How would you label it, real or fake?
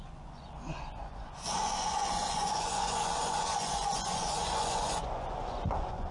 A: fake